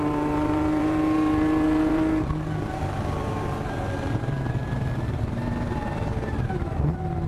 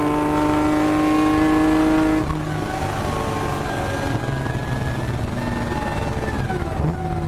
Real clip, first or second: second